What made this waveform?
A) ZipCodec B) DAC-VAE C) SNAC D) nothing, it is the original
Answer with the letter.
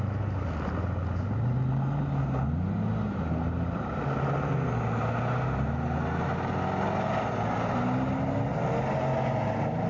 D